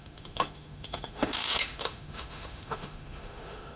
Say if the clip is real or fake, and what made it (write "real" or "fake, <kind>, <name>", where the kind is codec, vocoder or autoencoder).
fake, autoencoder, DAC-VAE